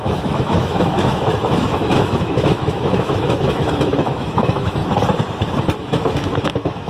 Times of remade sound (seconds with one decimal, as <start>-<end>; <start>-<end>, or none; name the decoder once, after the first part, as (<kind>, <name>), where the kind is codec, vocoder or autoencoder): 0.0-4.8 (autoencoder, DAC-VAE); 5.8-6.9